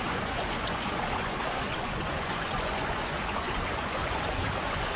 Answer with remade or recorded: remade